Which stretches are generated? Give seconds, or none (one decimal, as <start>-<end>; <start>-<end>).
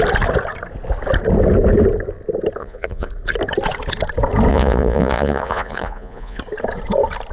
2.6-3.1; 4.5-6.4